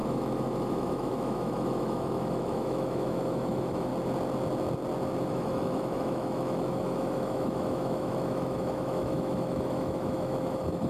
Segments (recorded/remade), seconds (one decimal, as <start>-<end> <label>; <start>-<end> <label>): 0.0-3.9 remade; 3.9-5.3 recorded; 5.3-10.9 remade